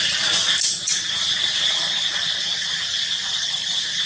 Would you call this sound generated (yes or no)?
no